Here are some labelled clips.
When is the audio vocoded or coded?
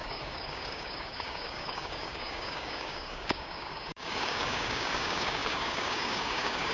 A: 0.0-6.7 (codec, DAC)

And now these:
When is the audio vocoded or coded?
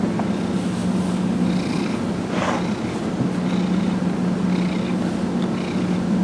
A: none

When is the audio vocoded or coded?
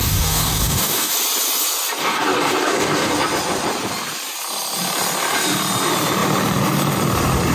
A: 0.0-1.1 (codec, DAC); 2.0-3.1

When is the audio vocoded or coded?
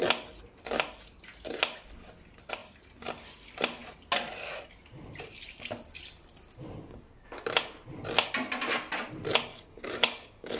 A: 9.5-10.6 (codec, DAC)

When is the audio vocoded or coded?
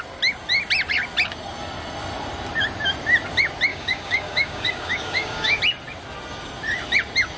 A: 3.7-5.6 (codec, DAC)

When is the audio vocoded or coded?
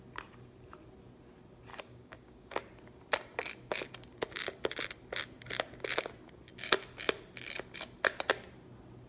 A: 1.7-2.6 (codec, DAC)